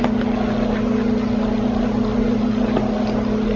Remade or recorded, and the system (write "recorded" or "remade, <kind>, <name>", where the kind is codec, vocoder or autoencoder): recorded